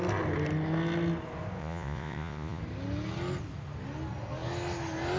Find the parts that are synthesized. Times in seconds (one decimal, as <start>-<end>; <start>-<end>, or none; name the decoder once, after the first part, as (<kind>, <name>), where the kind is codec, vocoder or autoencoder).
1.6-2.6 (vocoder, Vocos)